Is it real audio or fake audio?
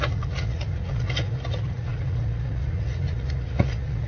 fake